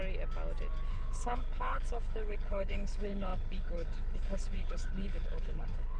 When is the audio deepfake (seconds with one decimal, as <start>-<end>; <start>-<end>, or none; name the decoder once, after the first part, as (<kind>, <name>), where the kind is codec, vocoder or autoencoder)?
0.9-6.0 (codec, HILCodec)